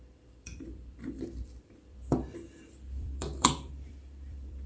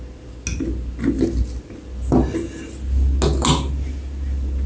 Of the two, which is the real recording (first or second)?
second